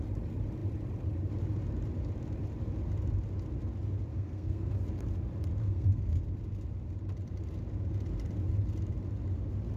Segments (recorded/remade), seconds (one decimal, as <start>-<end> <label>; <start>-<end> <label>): 0.0-4.1 recorded; 4.1-4.7 remade; 4.7-5.6 recorded; 5.6-6.2 remade; 6.2-9.8 recorded